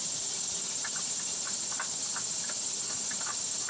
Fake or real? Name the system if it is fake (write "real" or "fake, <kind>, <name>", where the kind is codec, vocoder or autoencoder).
real